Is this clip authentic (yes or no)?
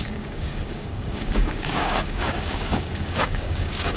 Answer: no